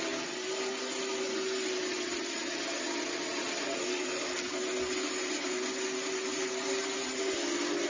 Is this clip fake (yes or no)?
no